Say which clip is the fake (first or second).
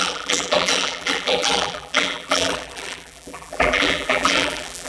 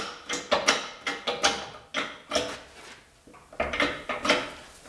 first